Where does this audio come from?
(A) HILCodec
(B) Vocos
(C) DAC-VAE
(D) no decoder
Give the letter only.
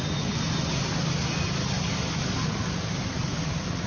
D